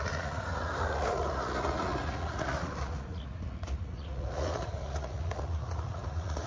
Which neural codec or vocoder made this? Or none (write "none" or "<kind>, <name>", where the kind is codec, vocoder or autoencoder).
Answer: vocoder, Vocos